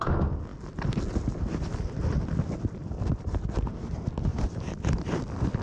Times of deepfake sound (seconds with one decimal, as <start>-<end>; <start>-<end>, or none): 4.3-5.6